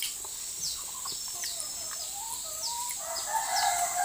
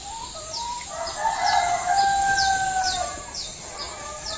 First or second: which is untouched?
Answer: second